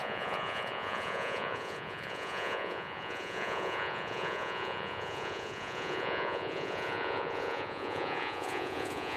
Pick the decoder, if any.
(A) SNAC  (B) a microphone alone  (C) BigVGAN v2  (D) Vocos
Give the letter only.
D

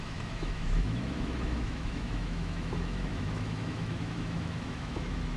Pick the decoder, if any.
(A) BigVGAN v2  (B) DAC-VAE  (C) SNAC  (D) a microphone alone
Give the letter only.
B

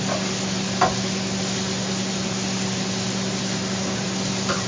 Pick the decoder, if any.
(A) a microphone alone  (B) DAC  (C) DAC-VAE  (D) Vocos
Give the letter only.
A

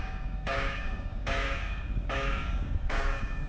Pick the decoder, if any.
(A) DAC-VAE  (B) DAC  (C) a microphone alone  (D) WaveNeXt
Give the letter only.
B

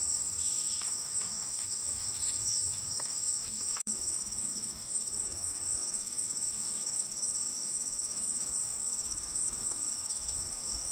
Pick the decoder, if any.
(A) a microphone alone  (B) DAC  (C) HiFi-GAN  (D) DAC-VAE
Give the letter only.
B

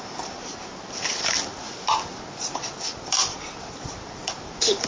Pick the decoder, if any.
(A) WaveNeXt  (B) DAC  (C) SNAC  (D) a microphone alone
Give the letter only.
D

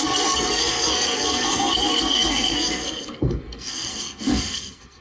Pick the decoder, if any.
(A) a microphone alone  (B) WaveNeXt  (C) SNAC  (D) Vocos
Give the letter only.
C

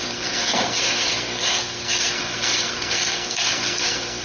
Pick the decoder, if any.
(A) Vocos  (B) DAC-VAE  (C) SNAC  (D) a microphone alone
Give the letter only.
C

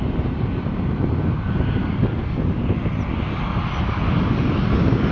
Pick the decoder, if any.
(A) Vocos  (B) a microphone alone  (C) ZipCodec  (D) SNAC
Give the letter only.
B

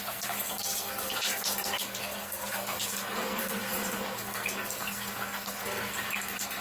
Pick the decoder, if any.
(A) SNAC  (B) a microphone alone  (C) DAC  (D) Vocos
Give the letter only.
A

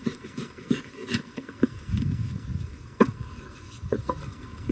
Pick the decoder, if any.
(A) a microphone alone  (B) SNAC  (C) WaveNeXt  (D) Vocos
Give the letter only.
B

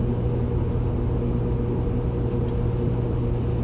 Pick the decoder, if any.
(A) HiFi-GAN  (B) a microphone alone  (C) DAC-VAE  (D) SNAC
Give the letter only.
B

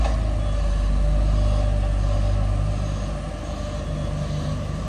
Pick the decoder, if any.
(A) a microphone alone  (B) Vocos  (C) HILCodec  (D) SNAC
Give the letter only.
A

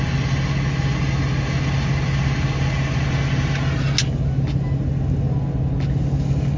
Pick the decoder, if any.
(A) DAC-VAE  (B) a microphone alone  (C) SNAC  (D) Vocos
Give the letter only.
B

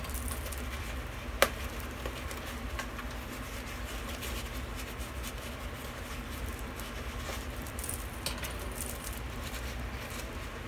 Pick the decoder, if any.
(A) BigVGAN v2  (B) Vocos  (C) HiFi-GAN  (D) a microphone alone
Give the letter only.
A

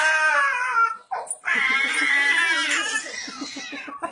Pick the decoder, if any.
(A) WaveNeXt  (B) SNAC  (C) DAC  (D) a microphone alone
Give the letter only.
D